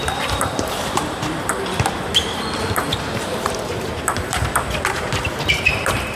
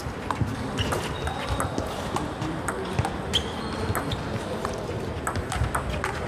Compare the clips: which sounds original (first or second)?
second